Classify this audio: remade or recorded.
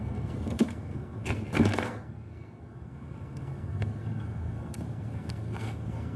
remade